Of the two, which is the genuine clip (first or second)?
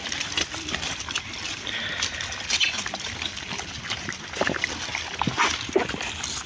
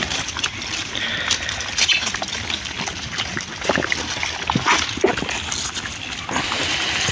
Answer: second